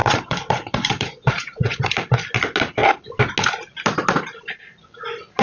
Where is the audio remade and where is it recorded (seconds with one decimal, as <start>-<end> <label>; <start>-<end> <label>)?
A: 0.0-1.8 remade; 1.8-5.4 recorded